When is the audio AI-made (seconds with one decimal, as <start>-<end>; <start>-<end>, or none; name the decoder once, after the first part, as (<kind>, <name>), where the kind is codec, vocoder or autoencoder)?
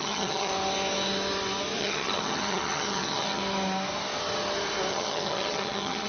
0.0-0.5 (vocoder, HiFi-GAN); 1.8-3.4; 4.9-6.1